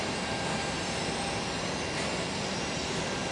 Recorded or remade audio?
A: recorded